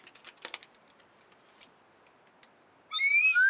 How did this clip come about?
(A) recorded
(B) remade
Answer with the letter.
A